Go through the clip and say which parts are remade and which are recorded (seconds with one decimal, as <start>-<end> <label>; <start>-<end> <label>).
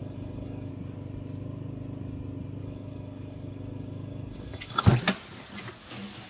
0.0-0.7 remade; 0.7-2.6 recorded; 2.6-4.8 remade; 4.8-6.3 recorded